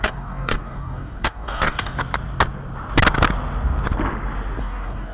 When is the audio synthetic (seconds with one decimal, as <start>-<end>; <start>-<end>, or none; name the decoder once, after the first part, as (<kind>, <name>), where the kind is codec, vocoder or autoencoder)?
0.0-2.0 (codec, DAC); 4.6-5.1